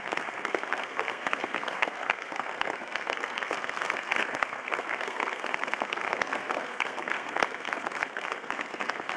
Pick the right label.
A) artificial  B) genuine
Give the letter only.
A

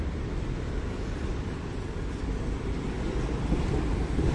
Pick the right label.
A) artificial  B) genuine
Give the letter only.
A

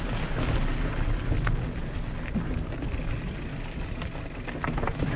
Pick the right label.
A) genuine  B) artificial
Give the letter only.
A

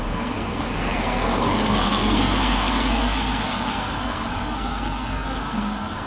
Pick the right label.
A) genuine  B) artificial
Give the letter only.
B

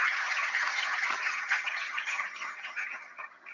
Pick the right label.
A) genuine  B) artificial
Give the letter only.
B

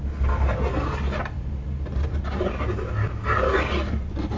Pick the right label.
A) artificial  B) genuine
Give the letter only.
B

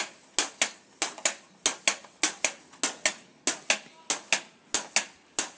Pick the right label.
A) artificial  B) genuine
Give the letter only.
B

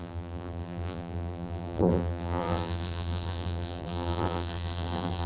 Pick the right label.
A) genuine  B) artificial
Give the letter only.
B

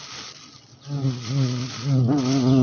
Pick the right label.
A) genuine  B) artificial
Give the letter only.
A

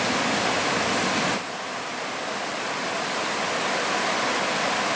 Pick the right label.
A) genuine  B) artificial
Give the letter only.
A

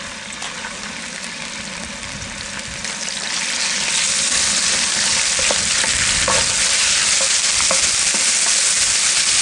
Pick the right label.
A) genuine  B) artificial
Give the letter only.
A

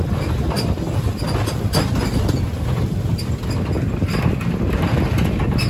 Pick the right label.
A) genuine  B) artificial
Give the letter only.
A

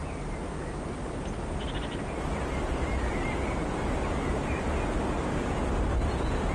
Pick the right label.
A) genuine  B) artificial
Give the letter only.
A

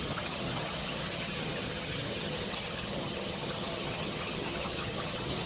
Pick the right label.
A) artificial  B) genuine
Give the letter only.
A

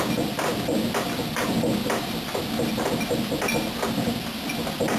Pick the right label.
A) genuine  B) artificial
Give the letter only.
A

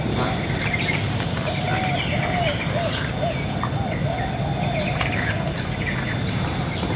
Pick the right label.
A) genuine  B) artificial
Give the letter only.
A